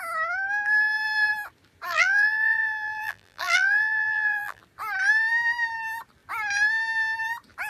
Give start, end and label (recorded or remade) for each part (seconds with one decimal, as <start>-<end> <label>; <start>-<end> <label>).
0.0-1.9 recorded; 1.9-4.6 remade; 4.6-7.7 recorded